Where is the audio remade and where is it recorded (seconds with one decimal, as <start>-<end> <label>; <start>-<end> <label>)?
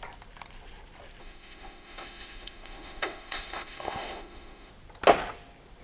0.0-1.2 recorded; 1.2-4.7 remade; 4.7-5.8 recorded